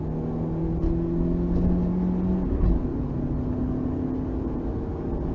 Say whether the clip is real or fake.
real